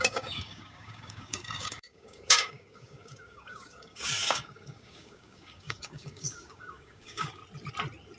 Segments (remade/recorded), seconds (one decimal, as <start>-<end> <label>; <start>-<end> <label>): 0.0-7.4 remade; 7.4-8.2 recorded